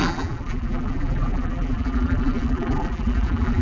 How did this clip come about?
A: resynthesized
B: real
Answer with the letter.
A